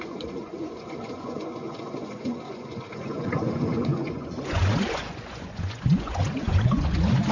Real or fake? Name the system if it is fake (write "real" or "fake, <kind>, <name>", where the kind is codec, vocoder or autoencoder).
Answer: fake, vocoder, Vocos